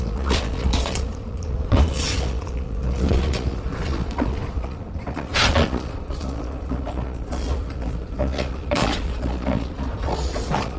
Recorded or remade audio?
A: remade